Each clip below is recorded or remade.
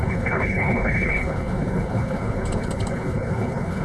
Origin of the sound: remade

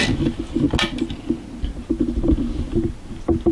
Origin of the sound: recorded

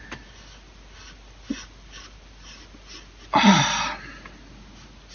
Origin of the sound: recorded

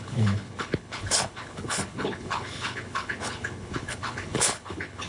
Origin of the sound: remade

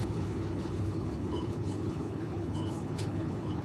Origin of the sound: remade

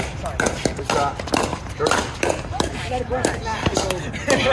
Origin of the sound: recorded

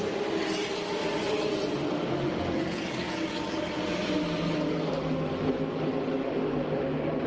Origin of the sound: recorded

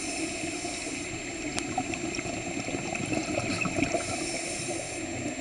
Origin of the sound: recorded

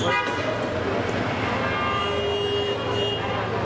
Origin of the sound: recorded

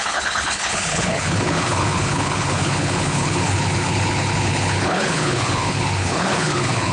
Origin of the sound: remade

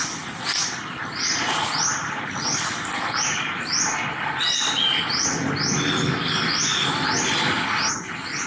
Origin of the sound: recorded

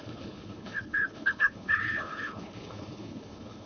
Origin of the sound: remade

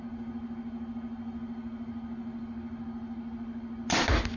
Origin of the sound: recorded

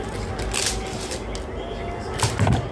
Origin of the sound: recorded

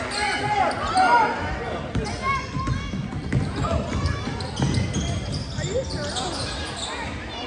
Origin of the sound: recorded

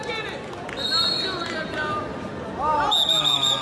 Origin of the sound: recorded